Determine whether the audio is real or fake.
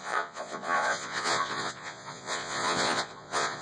fake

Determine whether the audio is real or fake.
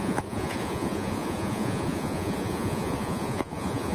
fake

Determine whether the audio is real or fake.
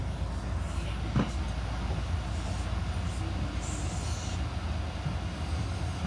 real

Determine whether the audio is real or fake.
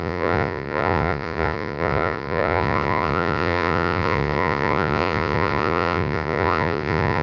fake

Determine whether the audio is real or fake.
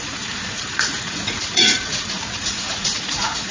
fake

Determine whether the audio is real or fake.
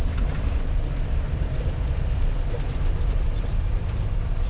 real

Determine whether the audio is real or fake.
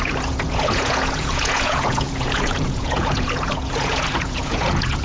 fake